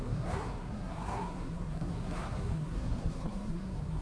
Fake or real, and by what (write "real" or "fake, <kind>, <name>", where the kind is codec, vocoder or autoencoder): fake, codec, SNAC